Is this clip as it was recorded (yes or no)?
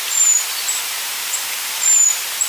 no